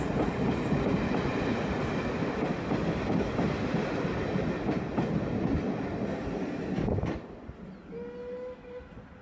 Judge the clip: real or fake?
real